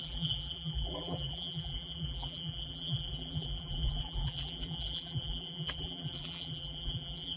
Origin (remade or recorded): remade